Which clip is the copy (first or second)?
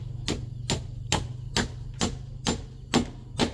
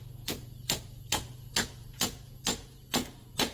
second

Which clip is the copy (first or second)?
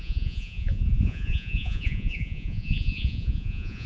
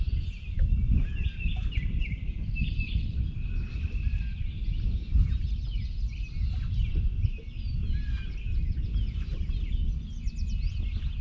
first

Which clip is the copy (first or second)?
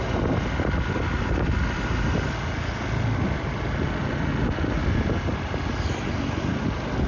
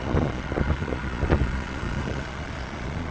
second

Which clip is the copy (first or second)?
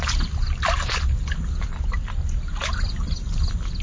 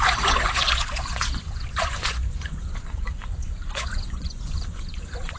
second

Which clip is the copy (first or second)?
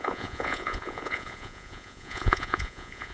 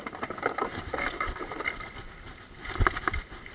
first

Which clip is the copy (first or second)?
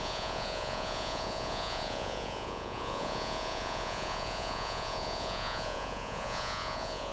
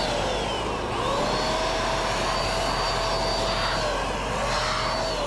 first